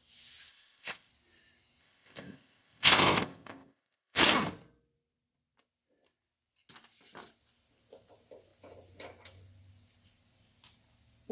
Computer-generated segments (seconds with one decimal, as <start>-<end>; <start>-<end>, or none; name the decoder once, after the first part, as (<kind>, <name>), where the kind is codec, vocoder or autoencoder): 0.5-1.1 (codec, ZipCodec); 1.8-4.2